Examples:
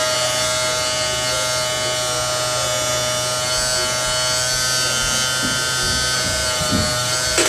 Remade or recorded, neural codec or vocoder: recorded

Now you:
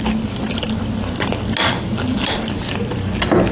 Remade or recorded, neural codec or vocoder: recorded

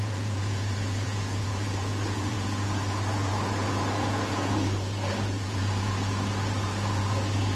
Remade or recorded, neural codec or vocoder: remade, vocoder, Vocos